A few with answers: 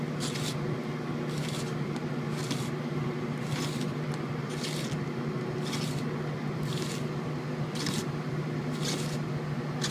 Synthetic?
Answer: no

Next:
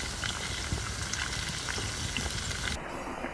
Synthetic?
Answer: no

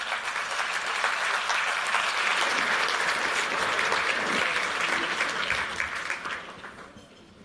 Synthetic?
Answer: no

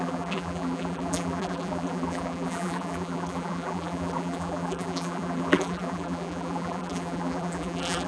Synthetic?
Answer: yes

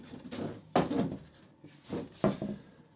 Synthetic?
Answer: no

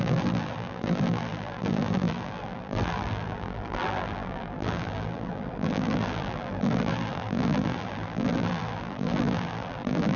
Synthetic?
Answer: yes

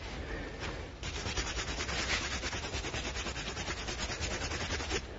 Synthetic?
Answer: no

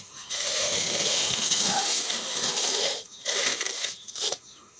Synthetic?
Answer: yes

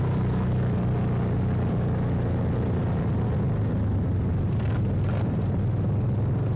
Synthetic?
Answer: no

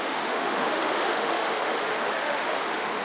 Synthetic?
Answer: yes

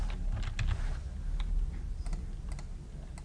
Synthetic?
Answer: no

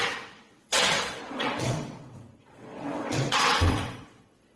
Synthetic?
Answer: yes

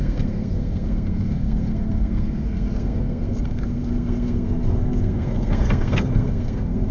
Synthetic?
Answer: yes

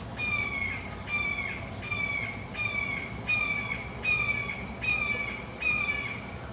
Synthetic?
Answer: no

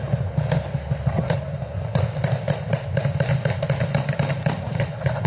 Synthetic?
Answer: no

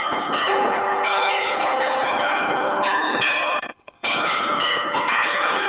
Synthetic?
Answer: yes